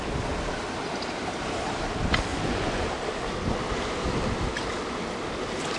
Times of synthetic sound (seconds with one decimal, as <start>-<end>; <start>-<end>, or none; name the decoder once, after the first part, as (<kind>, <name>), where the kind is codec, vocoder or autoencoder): 2.3-2.9 (vocoder, Vocos)